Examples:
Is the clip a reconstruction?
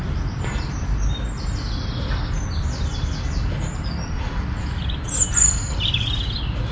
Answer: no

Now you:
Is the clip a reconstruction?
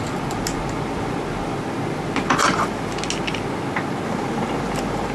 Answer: no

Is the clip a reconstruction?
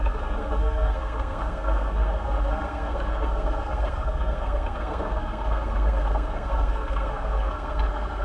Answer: yes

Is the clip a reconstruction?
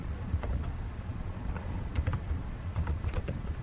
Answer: yes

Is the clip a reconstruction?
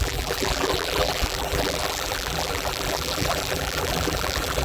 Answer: yes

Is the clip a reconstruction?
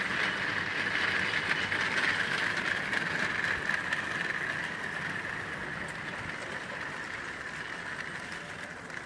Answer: no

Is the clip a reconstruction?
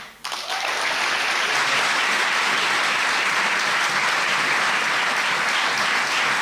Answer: no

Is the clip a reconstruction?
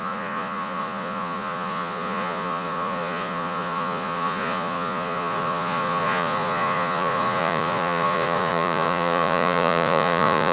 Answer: yes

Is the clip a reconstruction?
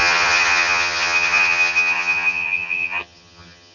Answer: yes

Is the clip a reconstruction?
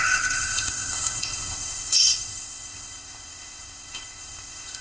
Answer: yes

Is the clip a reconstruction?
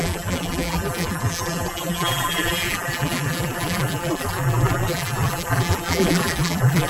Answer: yes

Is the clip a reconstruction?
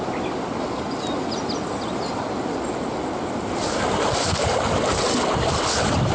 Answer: no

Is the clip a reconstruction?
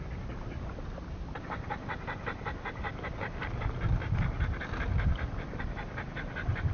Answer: no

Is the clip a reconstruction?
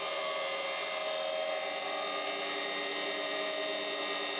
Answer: no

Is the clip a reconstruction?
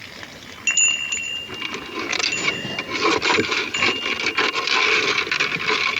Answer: no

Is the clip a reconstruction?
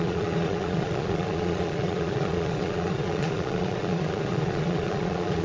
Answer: yes